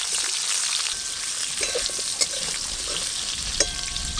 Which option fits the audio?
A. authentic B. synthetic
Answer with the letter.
A